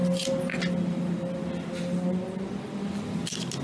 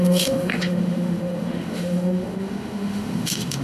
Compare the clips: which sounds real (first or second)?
first